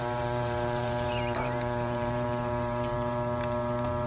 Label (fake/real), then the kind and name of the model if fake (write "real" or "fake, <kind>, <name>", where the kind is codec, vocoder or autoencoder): fake, vocoder, BigVGAN v2